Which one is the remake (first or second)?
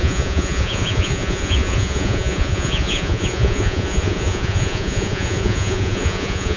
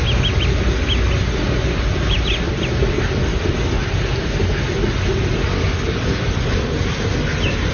first